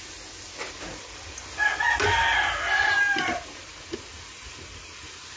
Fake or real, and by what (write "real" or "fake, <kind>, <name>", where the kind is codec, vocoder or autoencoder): real